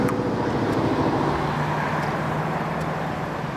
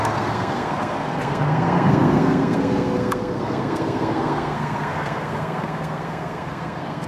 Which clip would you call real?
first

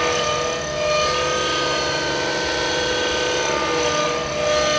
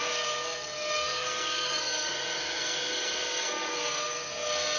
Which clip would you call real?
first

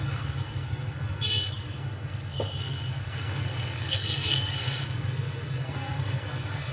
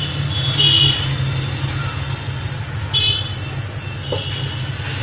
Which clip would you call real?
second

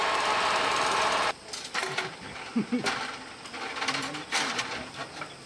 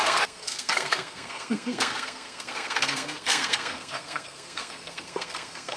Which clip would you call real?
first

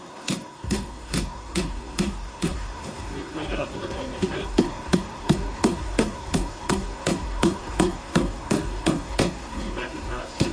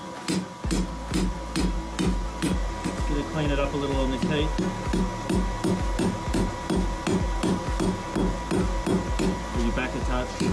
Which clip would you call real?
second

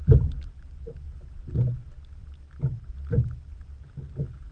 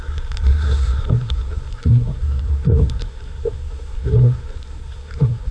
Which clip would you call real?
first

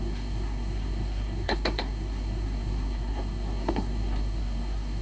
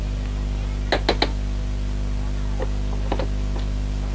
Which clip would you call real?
second